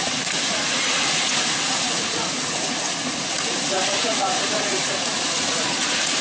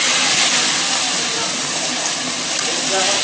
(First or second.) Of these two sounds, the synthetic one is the first